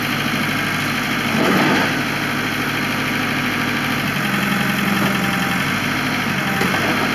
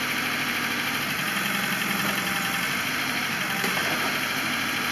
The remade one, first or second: second